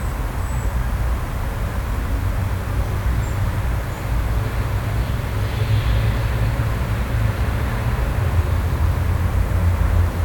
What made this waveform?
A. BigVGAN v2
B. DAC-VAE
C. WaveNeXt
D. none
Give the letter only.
D